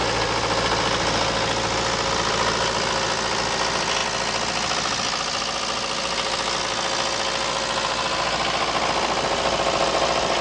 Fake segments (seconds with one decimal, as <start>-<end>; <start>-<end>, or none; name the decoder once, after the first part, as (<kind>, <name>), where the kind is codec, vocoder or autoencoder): none